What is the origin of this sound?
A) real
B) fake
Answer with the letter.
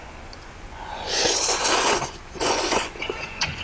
B